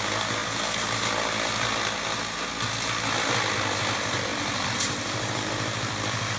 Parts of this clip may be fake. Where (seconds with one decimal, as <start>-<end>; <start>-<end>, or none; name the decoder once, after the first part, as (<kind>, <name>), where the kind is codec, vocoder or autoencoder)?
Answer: none